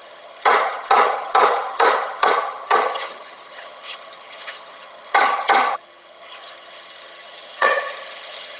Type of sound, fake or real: fake